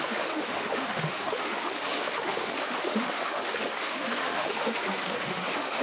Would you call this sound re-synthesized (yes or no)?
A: yes